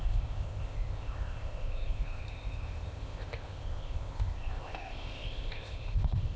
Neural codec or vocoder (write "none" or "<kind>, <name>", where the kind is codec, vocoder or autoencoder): codec, ZipCodec